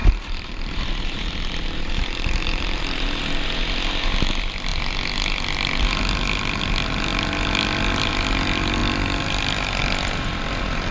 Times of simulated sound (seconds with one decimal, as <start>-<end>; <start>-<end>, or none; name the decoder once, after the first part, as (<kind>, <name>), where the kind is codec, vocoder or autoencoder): 0.0-3.2 (vocoder, BigVGAN v2)